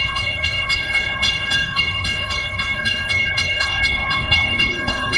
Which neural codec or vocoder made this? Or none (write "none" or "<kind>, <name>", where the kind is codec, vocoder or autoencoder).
codec, HILCodec